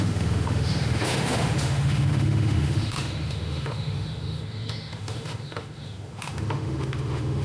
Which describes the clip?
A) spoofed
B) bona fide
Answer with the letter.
A